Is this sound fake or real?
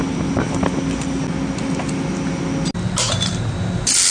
real